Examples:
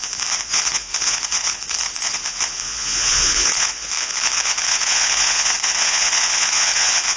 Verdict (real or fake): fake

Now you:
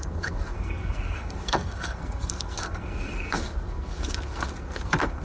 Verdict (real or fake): fake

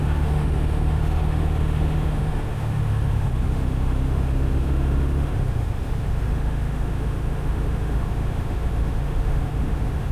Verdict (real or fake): fake